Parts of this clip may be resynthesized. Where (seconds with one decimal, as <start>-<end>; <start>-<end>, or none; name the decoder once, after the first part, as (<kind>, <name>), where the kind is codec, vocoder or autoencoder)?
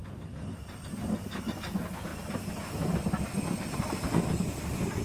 none